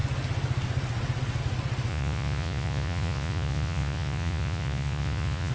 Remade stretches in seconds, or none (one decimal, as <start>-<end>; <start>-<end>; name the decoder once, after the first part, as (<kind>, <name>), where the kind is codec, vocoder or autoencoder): 1.9-5.5 (vocoder, Vocos)